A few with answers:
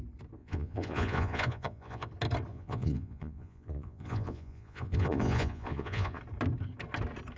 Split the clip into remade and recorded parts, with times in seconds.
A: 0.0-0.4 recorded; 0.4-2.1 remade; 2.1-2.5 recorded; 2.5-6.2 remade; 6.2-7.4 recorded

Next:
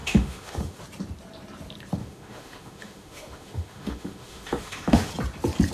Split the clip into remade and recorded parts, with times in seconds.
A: 0.0-0.8 remade; 0.8-2.0 recorded; 2.0-5.1 remade; 5.1-5.7 recorded

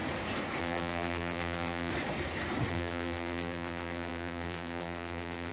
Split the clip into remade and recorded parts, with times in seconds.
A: 0.0-0.6 recorded; 0.6-1.9 remade; 1.9-2.7 recorded; 2.7-5.5 remade

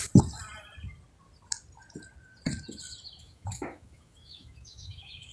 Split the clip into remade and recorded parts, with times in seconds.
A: 0.0-3.2 recorded; 3.2-5.3 remade

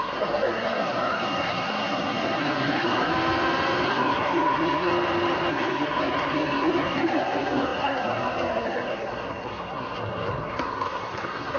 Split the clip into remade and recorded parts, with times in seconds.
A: 0.0-3.1 remade; 3.1-3.9 recorded; 3.9-4.9 remade; 4.9-5.5 recorded; 5.5-11.6 remade